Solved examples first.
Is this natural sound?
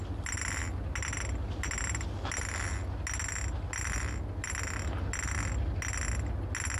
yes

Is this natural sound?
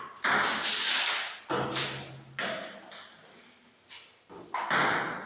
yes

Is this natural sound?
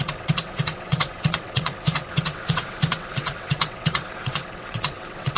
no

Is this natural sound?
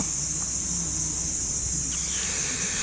yes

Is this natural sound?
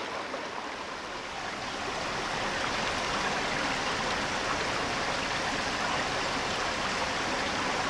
yes